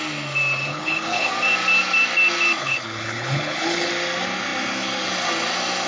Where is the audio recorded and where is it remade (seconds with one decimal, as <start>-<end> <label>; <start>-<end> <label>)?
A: 0.0-0.7 recorded; 0.7-1.3 remade; 1.3-2.6 recorded; 2.6-3.9 remade; 3.9-5.9 recorded